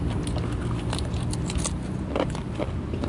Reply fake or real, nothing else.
real